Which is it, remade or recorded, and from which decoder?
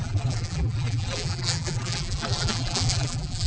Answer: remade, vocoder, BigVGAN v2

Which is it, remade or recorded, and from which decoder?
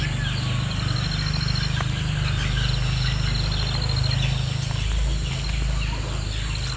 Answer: recorded